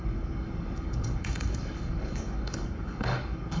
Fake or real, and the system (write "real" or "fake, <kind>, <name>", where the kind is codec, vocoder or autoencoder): fake, codec, DAC